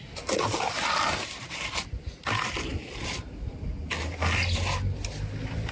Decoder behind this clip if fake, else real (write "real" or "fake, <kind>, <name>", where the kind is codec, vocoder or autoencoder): real